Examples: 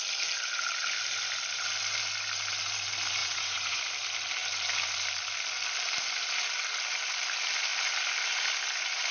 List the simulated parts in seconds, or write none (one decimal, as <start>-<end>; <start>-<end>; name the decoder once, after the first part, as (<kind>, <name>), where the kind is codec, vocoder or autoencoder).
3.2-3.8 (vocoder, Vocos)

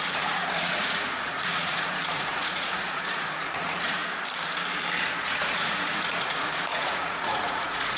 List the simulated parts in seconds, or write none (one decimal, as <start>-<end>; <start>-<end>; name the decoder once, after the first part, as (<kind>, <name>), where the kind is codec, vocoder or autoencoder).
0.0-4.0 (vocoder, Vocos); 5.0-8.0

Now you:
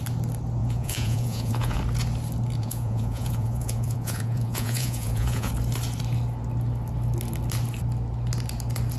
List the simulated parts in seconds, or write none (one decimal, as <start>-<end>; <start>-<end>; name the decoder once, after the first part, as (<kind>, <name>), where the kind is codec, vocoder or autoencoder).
0.6-1.8 (vocoder, Vocos); 2.6-5.5

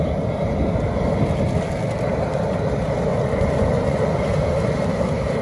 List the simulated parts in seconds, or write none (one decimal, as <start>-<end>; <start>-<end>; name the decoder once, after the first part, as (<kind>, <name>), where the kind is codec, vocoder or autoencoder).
3.1-4.1 (vocoder, Vocos)